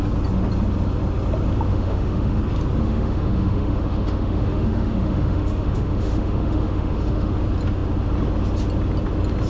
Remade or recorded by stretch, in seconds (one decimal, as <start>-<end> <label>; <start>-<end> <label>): 0.0-1.7 recorded; 1.7-2.4 remade; 2.4-2.8 recorded; 2.8-7.3 remade; 7.3-9.5 recorded